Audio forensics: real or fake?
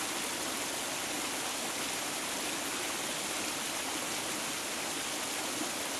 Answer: real